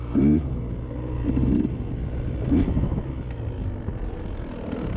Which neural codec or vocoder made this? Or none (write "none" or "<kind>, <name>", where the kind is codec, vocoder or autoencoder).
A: none